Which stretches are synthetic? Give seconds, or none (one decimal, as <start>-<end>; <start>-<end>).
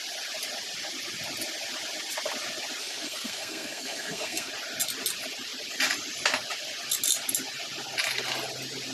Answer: 2.8-4.5